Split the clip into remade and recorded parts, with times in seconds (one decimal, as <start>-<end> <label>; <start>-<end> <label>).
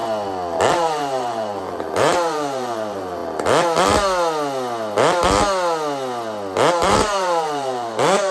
0.0-0.7 recorded; 0.7-3.2 remade; 3.2-6.7 recorded; 6.7-8.3 remade